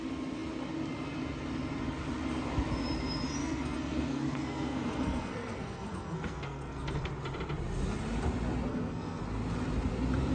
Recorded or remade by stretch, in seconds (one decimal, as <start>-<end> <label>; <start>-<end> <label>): 0.0-3.4 recorded; 3.4-7.1 remade; 7.1-8.7 recorded; 8.7-9.2 remade; 9.2-10.3 recorded